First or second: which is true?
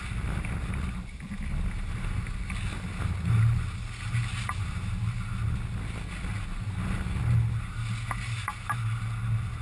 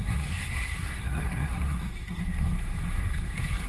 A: first